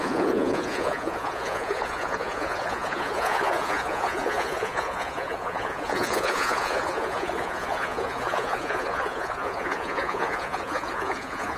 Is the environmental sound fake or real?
fake